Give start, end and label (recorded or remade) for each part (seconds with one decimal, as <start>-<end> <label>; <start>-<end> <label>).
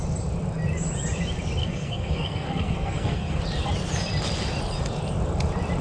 0.0-1.6 recorded; 1.6-3.4 remade; 3.4-5.8 recorded